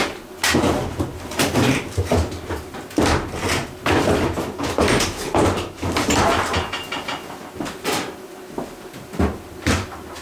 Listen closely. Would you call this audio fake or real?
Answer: real